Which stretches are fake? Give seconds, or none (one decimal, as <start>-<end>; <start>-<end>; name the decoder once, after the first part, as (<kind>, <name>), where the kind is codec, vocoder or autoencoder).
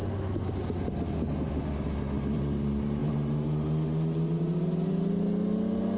0.0-0.6 (autoencoder, DAC-VAE)